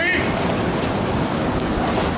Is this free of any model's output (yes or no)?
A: yes